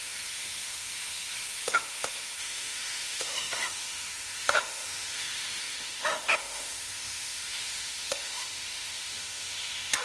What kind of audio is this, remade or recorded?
remade